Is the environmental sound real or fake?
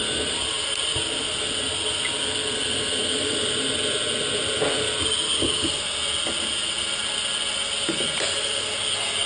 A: real